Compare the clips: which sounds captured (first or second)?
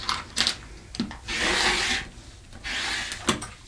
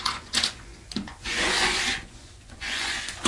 first